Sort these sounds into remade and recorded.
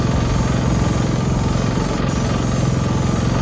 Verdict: recorded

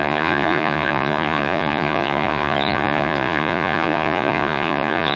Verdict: remade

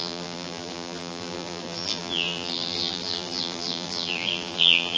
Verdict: remade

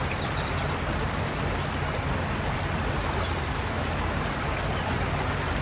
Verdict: recorded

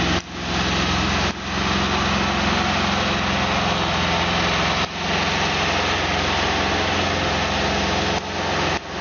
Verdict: recorded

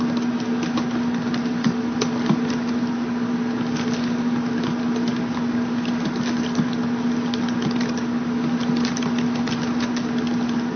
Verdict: recorded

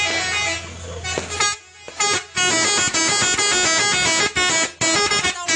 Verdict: recorded